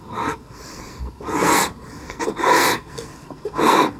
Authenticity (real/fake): fake